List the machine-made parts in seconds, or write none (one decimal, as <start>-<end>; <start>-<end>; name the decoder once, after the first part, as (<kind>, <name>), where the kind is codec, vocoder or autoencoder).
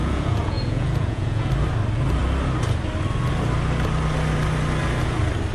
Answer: 0.0-1.5 (vocoder, Vocos)